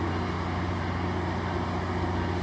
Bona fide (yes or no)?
yes